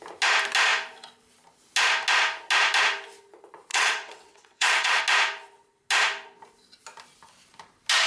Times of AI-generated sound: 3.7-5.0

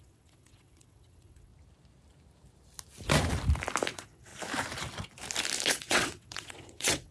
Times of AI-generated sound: 0.0-1.5; 3.9-4.3; 5.7-7.1

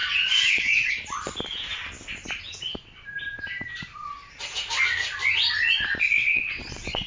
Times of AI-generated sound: 0.0-0.9; 6.2-7.1

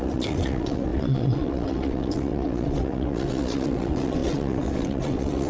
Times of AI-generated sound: 0.0-5.5

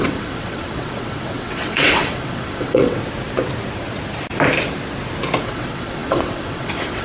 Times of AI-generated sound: 0.0-3.0; 5.4-7.0